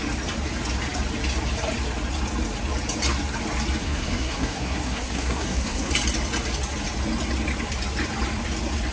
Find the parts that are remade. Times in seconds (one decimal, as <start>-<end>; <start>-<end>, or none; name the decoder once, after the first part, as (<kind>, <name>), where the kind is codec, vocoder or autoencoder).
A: 3.8-5.9 (codec, SNAC)